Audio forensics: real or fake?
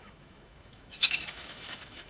fake